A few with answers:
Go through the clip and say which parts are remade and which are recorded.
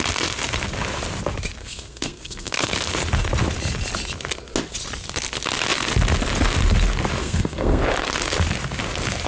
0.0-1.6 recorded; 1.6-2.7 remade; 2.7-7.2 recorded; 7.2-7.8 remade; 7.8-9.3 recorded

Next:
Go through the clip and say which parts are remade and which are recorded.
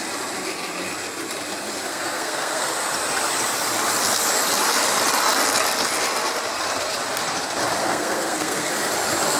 0.0-1.9 recorded; 1.9-2.7 remade; 2.7-7.8 recorded; 7.8-8.7 remade; 8.7-9.4 recorded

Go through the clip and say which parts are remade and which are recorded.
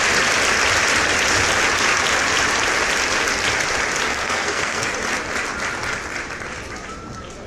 0.0-4.1 recorded; 4.1-4.9 remade; 4.9-7.5 recorded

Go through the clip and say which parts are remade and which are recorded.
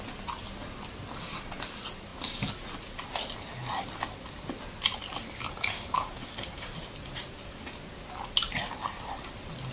0.0-9.7 recorded